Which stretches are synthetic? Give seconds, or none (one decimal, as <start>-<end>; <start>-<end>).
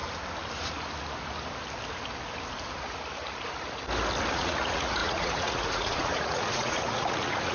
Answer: 4.3-7.5